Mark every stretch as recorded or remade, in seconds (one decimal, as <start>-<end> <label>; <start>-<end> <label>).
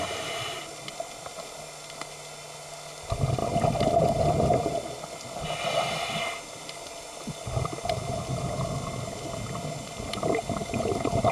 0.0-11.3 recorded